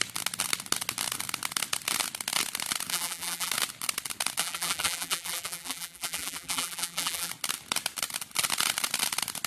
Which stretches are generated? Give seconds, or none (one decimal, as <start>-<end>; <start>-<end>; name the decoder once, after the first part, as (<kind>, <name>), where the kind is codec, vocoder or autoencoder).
2.9-3.5 (vocoder, BigVGAN v2); 4.4-7.3